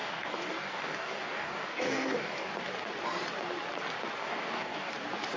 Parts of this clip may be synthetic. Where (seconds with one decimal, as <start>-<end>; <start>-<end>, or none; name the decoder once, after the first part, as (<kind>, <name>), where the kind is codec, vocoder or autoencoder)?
0.0-2.5 (codec, DAC); 4.2-4.9